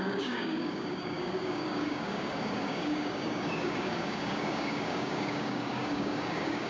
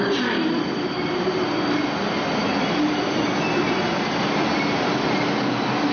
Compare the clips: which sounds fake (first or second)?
first